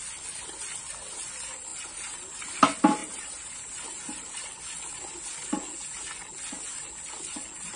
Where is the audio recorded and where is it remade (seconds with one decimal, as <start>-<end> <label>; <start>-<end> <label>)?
0.0-1.7 recorded; 1.7-2.5 remade; 2.5-3.0 recorded; 3.0-4.5 remade; 4.5-7.8 recorded